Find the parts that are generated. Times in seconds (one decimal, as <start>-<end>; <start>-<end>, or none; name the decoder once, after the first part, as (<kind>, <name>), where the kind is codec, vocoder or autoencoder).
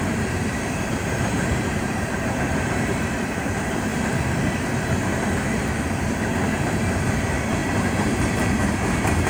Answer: 0.0-3.9 (vocoder, BigVGAN v2); 6.3-9.3